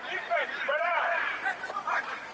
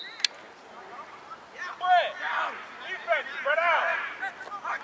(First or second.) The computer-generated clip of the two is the first